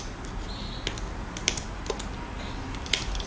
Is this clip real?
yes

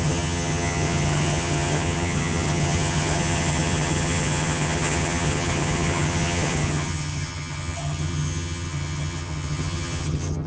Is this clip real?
no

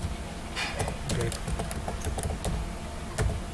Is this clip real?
yes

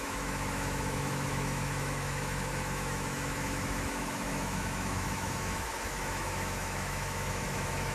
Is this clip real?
no